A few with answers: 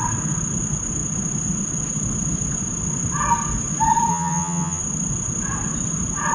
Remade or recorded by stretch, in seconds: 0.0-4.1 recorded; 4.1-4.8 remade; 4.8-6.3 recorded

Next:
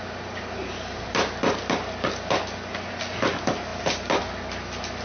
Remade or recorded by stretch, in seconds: 0.0-5.0 recorded

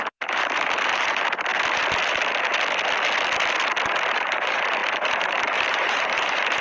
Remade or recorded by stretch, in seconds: 0.0-1.5 remade; 1.5-4.1 recorded; 4.1-6.6 remade

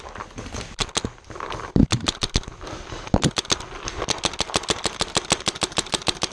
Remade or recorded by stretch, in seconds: 0.0-6.3 recorded

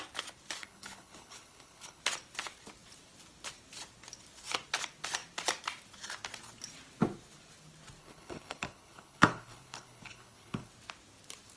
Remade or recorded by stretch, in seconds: 0.0-0.6 recorded; 0.6-2.0 remade; 2.0-8.0 recorded; 8.0-10.7 remade; 10.7-11.6 recorded

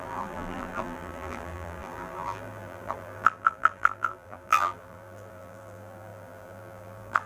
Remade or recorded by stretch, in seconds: 0.0-7.3 remade

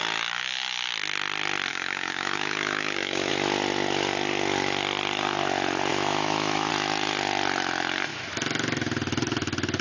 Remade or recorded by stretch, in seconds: 0.0-1.7 recorded; 1.7-3.3 remade; 3.3-5.9 recorded; 5.9-6.7 remade; 6.7-9.8 recorded

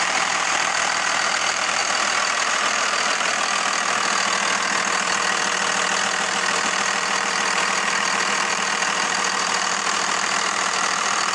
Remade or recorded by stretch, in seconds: 0.0-1.8 remade; 1.8-2.5 recorded; 2.5-3.3 remade; 3.3-6.0 recorded; 6.0-11.3 remade